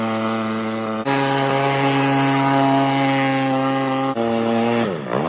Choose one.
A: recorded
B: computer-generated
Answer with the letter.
A